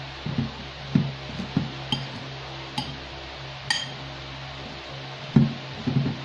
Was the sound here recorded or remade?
recorded